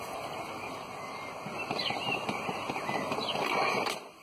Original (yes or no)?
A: yes